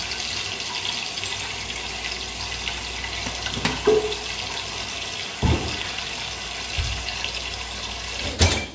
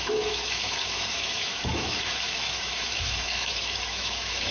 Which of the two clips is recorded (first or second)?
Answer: first